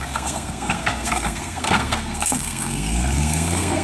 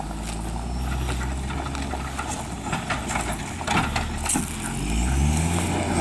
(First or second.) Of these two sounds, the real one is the second